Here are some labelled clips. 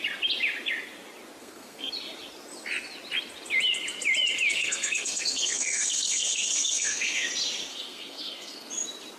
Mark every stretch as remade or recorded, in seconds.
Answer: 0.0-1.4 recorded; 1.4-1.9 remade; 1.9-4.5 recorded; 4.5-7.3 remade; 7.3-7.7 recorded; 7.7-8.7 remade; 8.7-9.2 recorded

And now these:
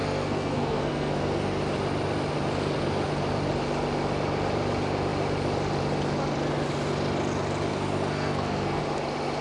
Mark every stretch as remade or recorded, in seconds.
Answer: 0.0-1.6 remade; 1.6-7.7 recorded; 7.7-8.8 remade; 8.8-9.4 recorded

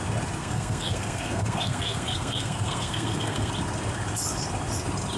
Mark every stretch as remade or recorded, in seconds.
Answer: 0.0-0.4 recorded; 0.4-3.5 remade; 3.5-5.2 recorded

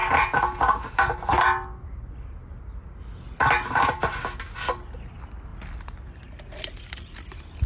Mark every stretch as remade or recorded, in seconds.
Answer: 0.0-7.7 recorded